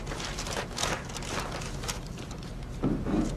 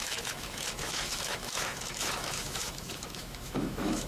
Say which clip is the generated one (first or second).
second